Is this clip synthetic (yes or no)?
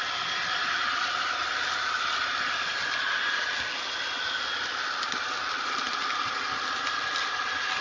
no